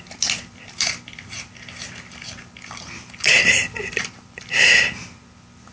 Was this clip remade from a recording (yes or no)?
no